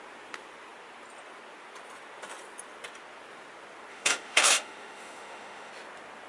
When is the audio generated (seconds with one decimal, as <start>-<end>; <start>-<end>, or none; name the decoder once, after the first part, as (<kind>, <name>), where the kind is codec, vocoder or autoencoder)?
3.9-5.7 (autoencoder, DAC-VAE)